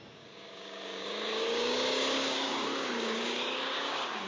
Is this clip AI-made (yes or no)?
yes